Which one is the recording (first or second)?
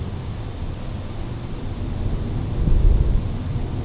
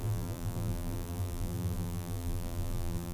first